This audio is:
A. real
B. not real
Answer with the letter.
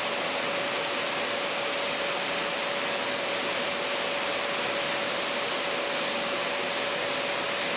A